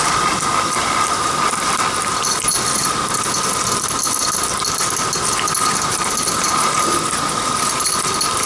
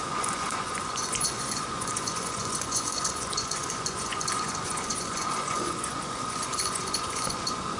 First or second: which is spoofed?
second